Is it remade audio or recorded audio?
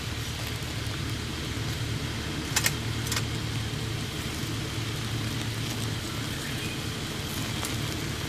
recorded